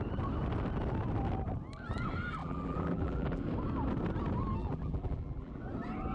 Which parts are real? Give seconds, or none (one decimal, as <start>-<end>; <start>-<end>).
0.0-2.4; 3.4-4.6; 5.6-6.1